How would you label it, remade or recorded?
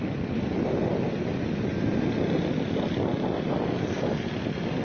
recorded